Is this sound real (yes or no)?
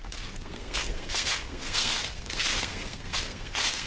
no